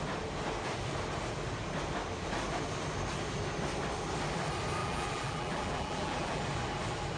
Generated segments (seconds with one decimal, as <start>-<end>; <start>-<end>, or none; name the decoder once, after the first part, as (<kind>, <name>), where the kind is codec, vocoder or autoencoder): 4.8-6.4 (vocoder, BigVGAN v2)